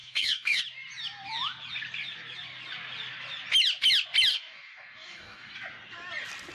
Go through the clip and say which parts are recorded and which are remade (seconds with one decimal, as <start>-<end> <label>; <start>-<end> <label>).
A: 0.0-0.6 remade; 0.6-4.3 recorded; 4.3-5.5 remade; 5.5-6.5 recorded